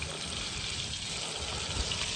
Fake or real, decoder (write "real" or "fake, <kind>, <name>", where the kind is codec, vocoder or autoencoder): real